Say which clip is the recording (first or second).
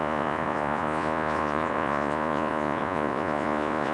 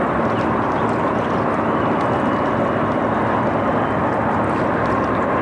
second